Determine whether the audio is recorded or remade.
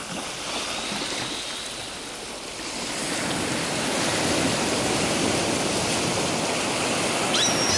recorded